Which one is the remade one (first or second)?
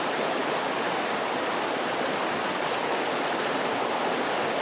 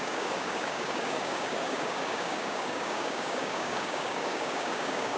second